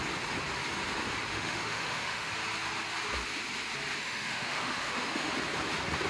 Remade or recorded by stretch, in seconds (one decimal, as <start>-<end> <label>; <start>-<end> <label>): 0.0-1.3 recorded; 1.3-2.3 remade; 2.3-4.0 recorded; 4.0-5.3 remade; 5.3-6.1 recorded